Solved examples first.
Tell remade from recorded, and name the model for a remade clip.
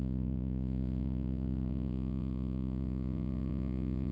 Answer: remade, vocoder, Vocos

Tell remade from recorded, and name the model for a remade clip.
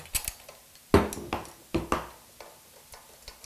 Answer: recorded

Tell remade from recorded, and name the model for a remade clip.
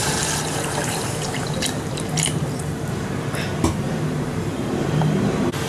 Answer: remade, vocoder, BigVGAN v2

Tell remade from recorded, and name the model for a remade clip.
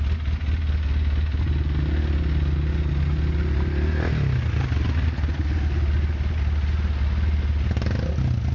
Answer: recorded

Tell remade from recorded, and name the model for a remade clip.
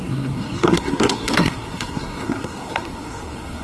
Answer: remade, codec, SNAC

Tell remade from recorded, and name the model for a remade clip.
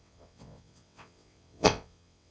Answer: remade, vocoder, WaveNeXt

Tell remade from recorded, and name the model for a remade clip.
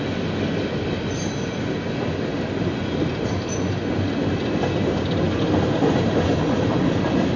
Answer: recorded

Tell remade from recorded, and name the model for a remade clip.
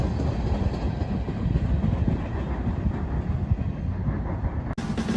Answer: recorded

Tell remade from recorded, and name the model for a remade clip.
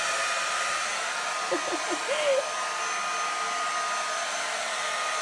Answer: recorded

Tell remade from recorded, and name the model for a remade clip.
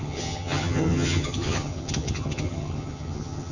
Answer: remade, vocoder, HiFi-GAN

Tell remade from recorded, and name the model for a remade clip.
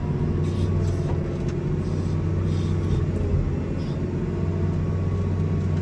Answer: recorded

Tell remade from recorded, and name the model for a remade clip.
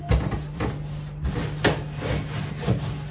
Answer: recorded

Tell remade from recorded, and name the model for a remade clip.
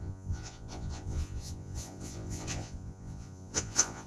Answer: remade, vocoder, Vocos